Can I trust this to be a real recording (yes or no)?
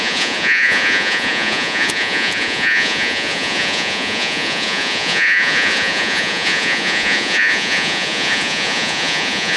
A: no